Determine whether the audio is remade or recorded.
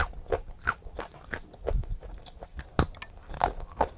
recorded